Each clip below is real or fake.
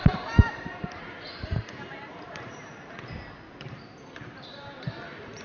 fake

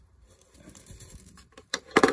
fake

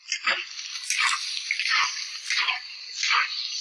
real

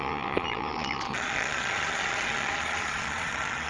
fake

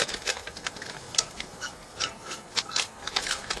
fake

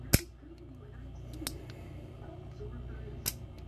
real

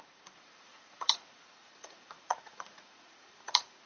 fake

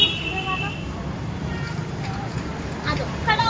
fake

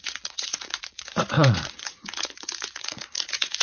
fake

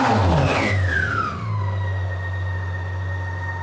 real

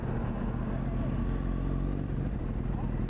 real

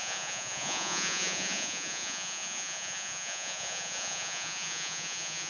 fake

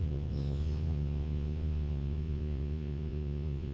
fake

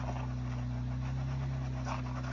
real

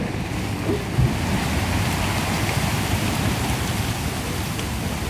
real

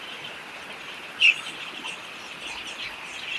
real